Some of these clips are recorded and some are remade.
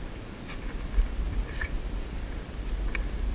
remade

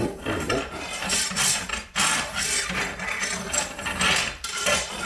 remade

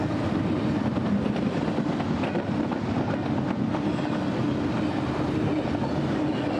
recorded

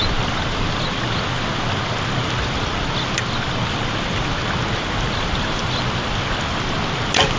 recorded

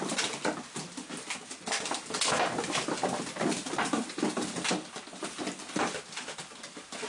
recorded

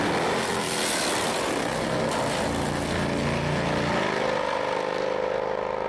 recorded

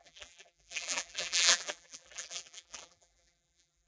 remade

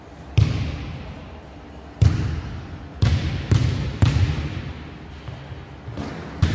recorded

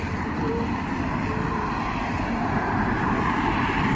recorded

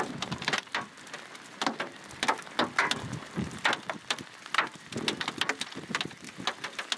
recorded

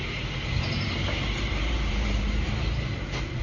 remade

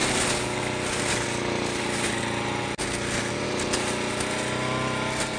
recorded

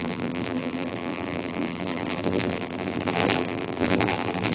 remade